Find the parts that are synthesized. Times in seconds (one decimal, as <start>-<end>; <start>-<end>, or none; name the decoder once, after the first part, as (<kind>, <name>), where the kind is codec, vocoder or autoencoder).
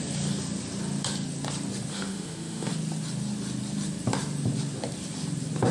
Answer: 1.9-2.7 (autoencoder, DAC-VAE)